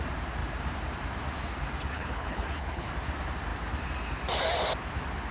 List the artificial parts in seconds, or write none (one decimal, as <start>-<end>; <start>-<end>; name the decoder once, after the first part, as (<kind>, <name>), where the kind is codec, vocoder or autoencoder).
1.9-2.9 (codec, HILCodec)